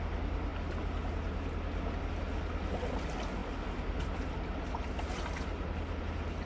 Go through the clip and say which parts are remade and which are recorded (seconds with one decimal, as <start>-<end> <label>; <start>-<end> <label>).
0.0-6.5 recorded